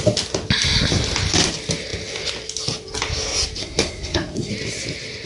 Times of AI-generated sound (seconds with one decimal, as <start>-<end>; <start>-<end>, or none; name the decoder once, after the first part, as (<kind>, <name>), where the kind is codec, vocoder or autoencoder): 3.6-4.5 (codec, SNAC)